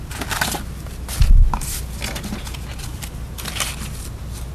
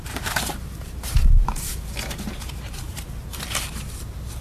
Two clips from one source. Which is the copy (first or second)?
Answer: second